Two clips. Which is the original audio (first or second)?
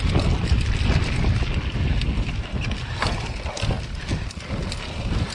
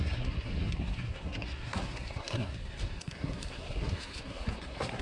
first